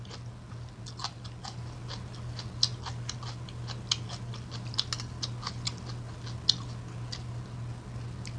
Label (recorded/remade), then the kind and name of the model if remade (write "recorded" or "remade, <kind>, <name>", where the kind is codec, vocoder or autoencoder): recorded